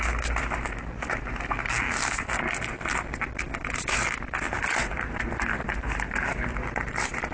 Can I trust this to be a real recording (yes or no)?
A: yes